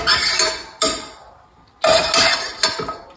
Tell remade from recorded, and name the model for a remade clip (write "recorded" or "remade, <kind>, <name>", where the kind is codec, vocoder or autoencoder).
recorded